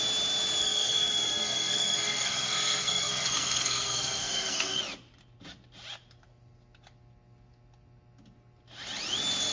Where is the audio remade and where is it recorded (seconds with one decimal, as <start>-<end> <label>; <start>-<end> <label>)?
0.0-0.6 recorded; 0.6-4.8 remade; 4.8-9.5 recorded